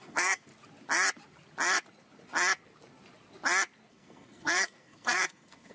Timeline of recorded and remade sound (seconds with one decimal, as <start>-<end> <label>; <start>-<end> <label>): 0.0-0.5 remade; 0.5-3.9 recorded; 3.9-5.7 remade